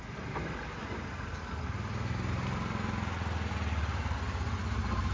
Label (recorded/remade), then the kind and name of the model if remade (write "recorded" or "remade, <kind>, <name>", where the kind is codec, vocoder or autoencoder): recorded